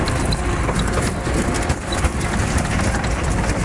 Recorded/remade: recorded